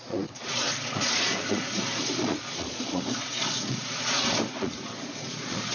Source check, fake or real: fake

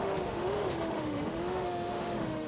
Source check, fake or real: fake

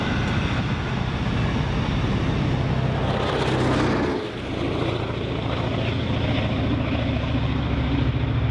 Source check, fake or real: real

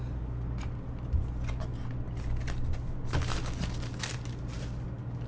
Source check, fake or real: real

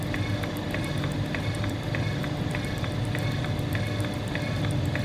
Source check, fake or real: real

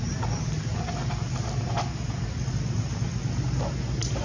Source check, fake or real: real